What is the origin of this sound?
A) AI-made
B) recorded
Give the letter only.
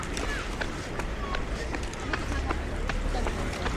B